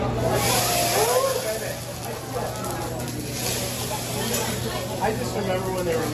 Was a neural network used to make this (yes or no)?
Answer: no